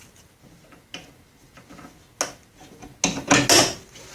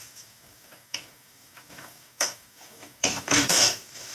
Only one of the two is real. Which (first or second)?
first